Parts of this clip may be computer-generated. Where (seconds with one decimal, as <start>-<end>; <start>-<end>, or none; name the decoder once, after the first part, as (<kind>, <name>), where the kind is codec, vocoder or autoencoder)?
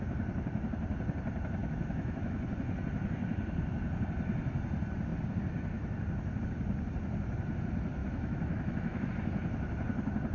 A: 1.6-2.4 (autoencoder, DAC-VAE); 8.0-9.1